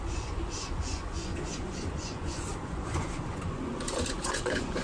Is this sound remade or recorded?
remade